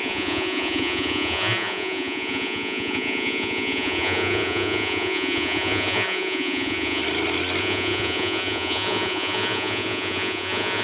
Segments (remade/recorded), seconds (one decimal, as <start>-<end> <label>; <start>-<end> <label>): 0.0-7.0 remade; 7.0-7.6 recorded; 7.6-10.8 remade